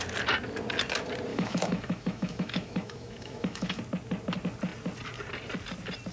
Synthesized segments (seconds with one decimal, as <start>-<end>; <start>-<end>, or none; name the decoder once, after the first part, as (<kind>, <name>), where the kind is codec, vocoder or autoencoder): 1.3-3.8 (autoencoder, DAC-VAE)

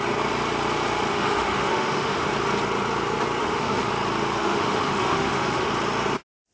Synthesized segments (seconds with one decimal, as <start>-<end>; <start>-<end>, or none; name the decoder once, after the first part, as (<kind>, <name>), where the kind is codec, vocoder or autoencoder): 1.1-2.3 (autoencoder, DAC-VAE); 3.4-3.9; 4.4-5.7

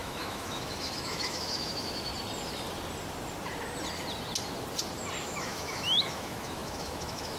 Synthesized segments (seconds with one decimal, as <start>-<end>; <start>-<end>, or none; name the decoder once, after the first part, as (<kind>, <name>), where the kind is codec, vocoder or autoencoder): 0.0-2.1 (autoencoder, DAC-VAE); 5.2-7.4

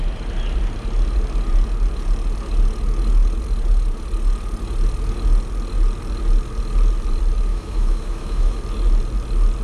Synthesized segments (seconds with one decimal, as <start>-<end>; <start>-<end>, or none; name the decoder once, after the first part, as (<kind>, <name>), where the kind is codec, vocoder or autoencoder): 7.5-8.6 (autoencoder, DAC-VAE)

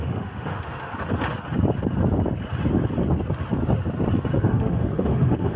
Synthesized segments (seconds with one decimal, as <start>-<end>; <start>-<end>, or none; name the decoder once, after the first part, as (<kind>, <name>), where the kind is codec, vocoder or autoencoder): 0.0-0.9 (autoencoder, DAC-VAE); 4.3-5.6

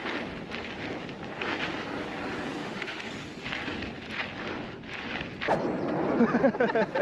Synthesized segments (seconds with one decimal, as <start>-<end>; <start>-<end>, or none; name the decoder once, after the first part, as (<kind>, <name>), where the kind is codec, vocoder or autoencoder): 2.6-3.1 (autoencoder, DAC-VAE)

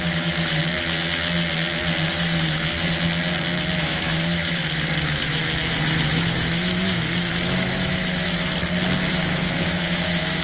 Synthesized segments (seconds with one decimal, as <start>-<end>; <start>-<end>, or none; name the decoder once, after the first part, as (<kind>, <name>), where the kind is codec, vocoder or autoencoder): 0.0-0.6 (autoencoder, DAC-VAE); 2.1-2.7; 3.8-8.6; 9.1-10.4